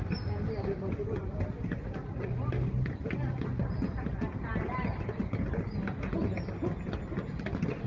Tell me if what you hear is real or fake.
real